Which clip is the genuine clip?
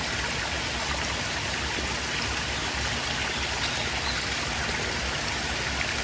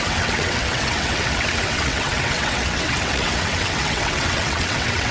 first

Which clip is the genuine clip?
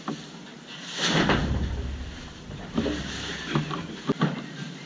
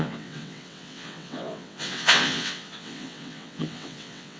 first